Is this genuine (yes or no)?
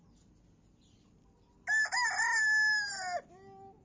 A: yes